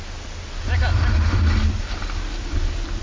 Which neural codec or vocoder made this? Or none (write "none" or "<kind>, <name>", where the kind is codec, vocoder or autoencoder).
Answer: none